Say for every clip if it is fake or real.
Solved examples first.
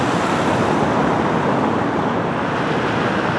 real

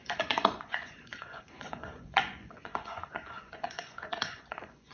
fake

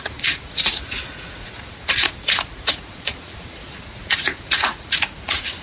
fake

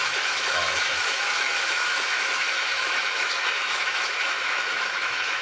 fake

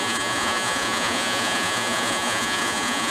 fake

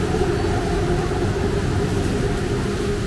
real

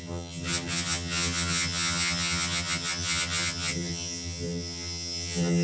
fake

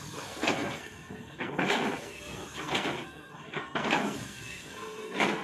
fake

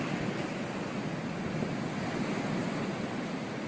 real